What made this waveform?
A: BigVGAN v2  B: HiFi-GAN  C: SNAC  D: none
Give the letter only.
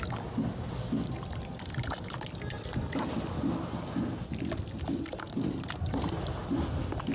D